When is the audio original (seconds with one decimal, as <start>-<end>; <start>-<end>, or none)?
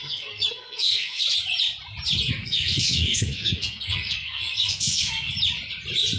1.2-2.4; 5.3-6.2